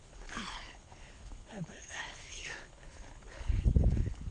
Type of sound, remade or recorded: remade